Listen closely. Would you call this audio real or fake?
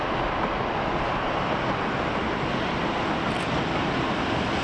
real